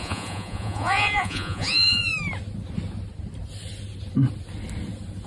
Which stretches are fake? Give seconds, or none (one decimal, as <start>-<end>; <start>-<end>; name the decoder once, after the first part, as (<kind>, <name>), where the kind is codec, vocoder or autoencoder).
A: 0.0-2.1 (vocoder, Vocos)